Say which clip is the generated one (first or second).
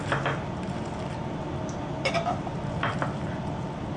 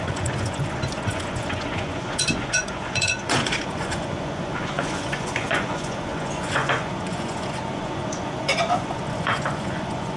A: second